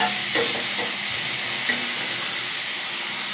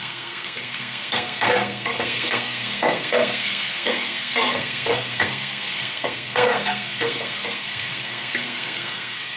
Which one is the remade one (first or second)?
second